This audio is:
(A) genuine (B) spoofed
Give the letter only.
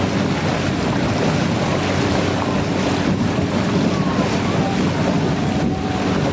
A